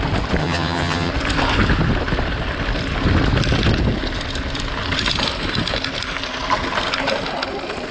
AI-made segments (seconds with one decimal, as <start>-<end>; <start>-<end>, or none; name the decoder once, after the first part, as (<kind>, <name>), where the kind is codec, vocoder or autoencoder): 0.4-1.1 (vocoder, HiFi-GAN)